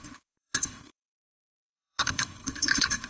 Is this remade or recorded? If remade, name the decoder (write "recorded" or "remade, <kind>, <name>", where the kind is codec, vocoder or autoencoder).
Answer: remade, codec, SNAC